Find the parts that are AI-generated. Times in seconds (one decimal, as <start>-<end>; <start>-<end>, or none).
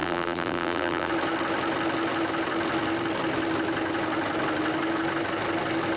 0.0-1.1